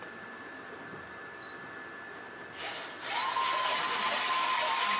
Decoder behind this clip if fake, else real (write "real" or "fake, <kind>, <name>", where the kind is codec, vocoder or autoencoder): real